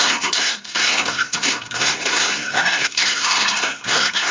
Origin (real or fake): fake